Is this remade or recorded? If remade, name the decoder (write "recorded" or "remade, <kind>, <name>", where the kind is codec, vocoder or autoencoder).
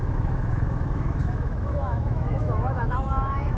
remade, autoencoder, DAC-VAE